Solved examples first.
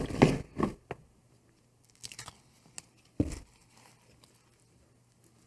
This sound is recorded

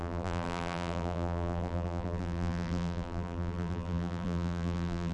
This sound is remade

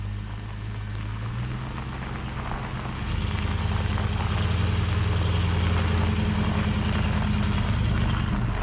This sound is recorded